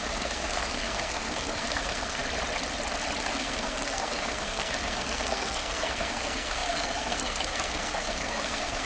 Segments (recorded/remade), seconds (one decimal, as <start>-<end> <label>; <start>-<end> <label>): 0.0-2.2 remade; 2.2-3.2 recorded; 3.2-8.9 remade